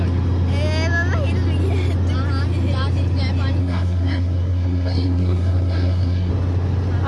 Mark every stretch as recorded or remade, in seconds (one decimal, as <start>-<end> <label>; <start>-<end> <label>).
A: 0.0-3.6 recorded; 3.6-6.3 remade; 6.3-7.1 recorded